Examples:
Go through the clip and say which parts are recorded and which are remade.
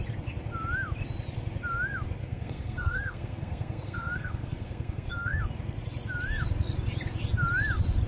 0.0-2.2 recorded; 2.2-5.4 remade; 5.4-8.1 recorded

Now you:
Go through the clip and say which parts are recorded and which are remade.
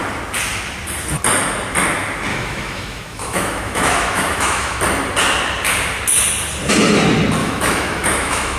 0.0-2.3 recorded; 2.3-4.8 remade; 4.8-7.4 recorded; 7.4-8.6 remade